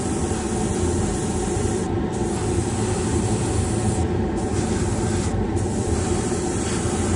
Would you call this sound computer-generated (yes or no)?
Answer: yes